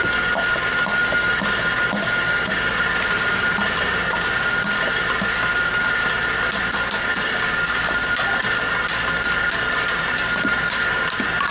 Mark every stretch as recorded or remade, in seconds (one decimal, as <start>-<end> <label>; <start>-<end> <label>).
0.0-11.5 recorded